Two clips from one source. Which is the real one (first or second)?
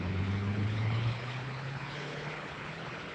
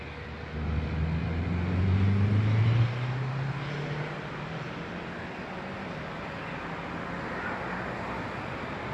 second